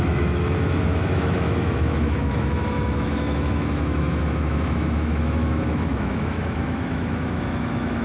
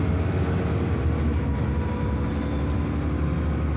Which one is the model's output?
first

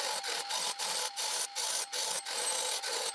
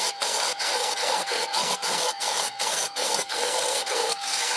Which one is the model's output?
second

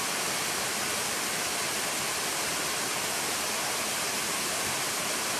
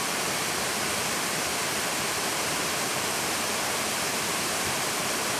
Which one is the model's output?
second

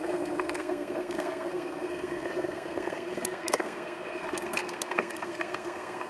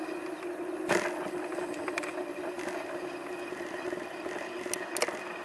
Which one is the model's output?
first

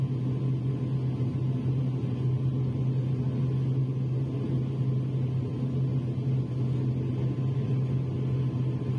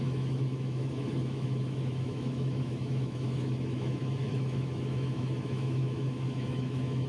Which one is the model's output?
second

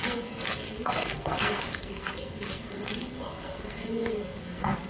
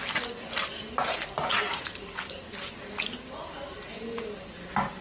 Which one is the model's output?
first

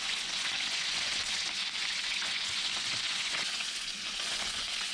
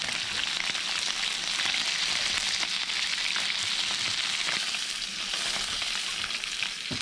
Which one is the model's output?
first